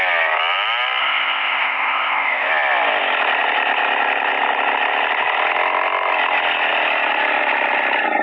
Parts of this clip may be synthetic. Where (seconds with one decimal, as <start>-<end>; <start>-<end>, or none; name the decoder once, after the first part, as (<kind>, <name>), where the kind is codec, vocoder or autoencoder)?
1.0-2.5 (codec, ZipCodec)